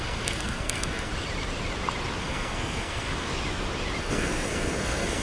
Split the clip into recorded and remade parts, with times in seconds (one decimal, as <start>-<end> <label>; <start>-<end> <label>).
0.0-1.1 remade; 1.1-2.2 recorded; 2.2-3.3 remade; 3.3-4.0 recorded; 4.0-5.2 remade